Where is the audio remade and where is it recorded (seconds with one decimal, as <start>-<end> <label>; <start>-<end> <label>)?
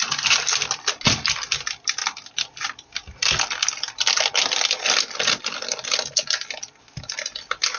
0.0-7.8 recorded